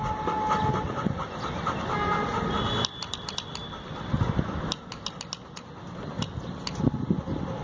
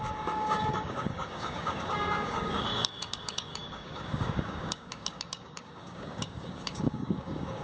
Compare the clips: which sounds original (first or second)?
first